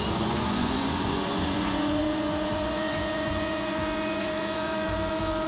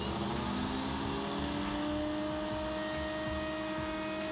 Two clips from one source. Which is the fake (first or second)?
first